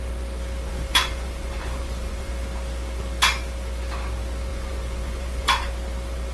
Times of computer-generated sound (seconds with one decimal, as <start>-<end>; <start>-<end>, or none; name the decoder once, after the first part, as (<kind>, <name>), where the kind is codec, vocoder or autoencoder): 0.7-2.3 (vocoder, Vocos); 4.5-5.7